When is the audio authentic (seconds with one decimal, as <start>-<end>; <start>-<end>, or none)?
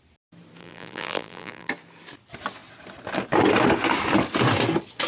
0.0-0.6; 1.7-5.1